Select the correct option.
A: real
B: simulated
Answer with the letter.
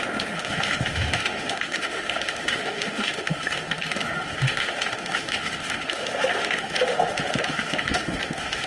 B